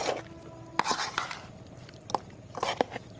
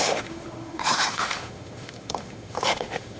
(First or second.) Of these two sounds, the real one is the first